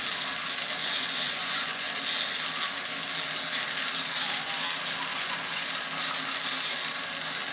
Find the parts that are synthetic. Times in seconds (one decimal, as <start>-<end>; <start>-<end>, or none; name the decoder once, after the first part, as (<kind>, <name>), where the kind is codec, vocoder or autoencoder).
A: 0.8-1.9 (vocoder, Vocos); 5.1-5.7